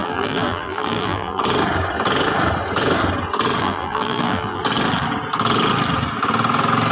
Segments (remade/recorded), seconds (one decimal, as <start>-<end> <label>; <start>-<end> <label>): 0.0-1.4 remade; 1.4-3.6 recorded; 3.6-4.6 remade; 4.6-6.9 recorded